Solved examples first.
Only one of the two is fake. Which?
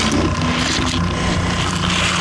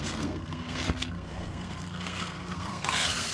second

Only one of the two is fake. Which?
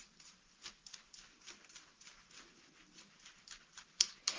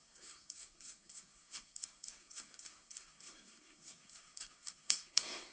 second